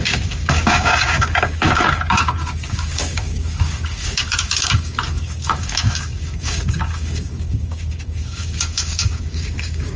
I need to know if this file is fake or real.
fake